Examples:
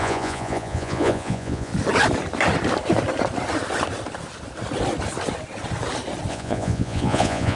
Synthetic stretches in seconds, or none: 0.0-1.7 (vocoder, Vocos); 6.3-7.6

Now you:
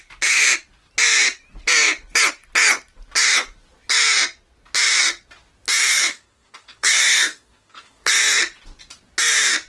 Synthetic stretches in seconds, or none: 5.9-8.1 (codec, DAC)

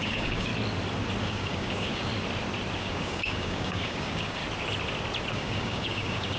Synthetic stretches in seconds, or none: 0.0-0.5 (codec, DAC); 1.2-2.1; 2.8-4.4; 5.3-6.4

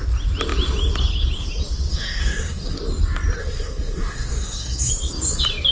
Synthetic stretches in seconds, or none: 1.9-2.8 (codec, SNAC); 3.4-4.9